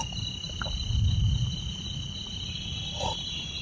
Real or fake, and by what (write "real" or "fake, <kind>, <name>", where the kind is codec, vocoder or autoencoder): real